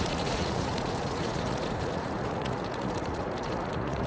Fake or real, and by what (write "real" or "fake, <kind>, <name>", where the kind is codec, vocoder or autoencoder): fake, vocoder, Vocos